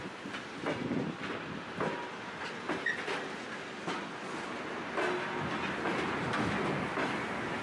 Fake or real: real